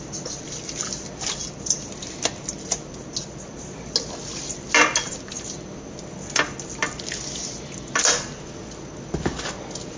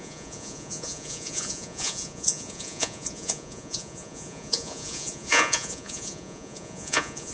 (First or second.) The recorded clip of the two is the first